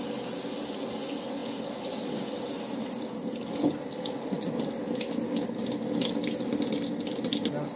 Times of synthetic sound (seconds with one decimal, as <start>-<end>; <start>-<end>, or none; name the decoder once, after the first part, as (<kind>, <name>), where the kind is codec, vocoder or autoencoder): none